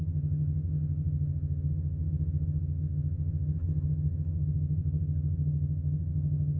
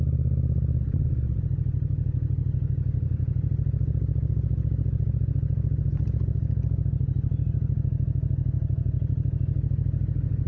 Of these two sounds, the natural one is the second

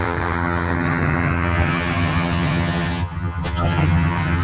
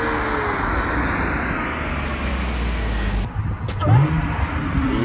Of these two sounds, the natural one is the second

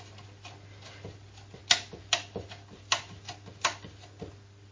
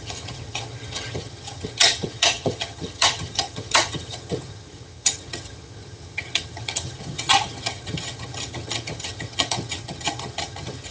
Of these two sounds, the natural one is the first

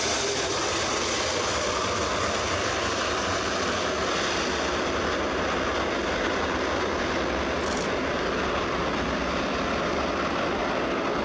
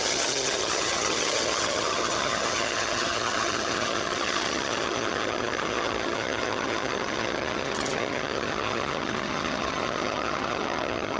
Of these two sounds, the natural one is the first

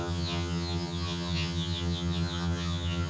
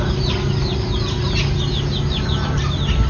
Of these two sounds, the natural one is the second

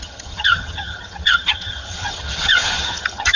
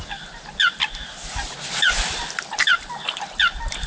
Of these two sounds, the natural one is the second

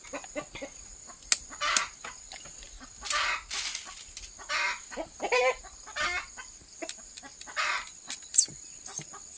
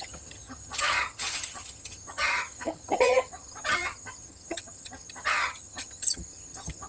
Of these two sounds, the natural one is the first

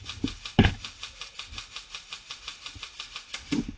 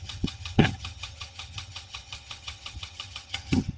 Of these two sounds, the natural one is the first